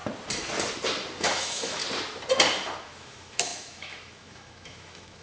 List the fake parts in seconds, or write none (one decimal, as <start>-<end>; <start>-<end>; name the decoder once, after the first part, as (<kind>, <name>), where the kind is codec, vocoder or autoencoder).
1.2-1.8 (autoencoder, DAC-VAE); 2.8-5.2